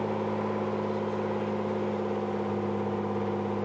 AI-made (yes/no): no